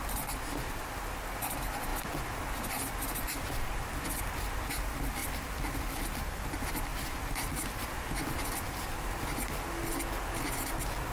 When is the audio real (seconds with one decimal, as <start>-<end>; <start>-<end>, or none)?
0.0-11.1